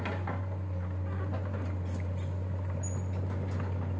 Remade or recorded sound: recorded